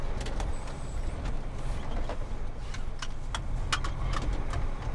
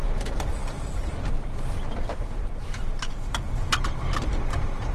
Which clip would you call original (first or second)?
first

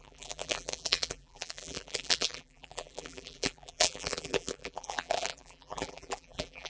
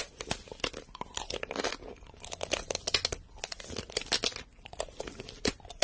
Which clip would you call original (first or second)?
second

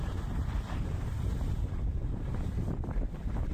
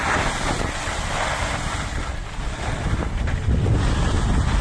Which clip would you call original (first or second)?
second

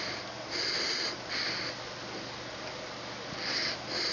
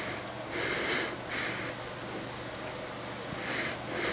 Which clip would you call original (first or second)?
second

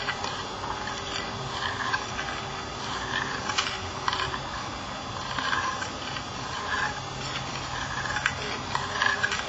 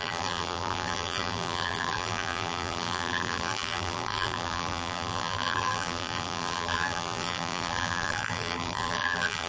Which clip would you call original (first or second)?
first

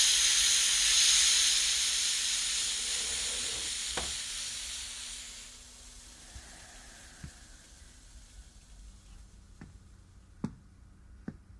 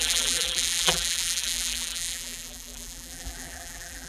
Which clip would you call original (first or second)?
first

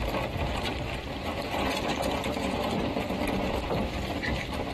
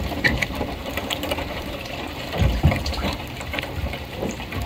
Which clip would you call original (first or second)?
first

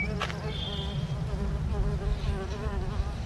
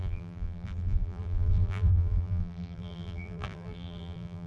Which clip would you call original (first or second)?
first